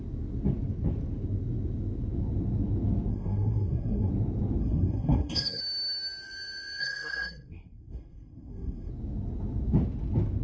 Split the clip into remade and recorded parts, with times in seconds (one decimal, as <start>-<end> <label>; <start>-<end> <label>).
0.0-3.1 recorded; 3.1-4.1 remade; 4.1-4.6 recorded; 4.6-5.6 remade; 5.6-6.8 recorded; 6.8-8.9 remade; 8.9-10.4 recorded